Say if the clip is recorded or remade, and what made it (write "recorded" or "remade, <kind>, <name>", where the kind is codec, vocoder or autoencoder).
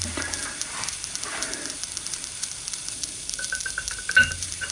remade, vocoder, BigVGAN v2